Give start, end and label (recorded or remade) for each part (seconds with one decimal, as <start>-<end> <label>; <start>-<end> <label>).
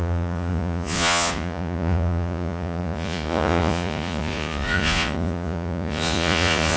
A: 0.0-6.8 remade